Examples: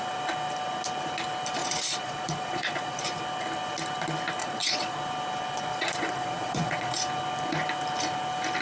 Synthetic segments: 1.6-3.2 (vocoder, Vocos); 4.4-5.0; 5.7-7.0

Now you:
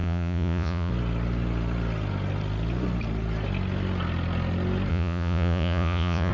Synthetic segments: 0.0-0.9 (vocoder, Vocos); 4.9-6.3